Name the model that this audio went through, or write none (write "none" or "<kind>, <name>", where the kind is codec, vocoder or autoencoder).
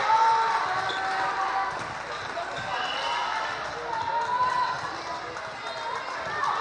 none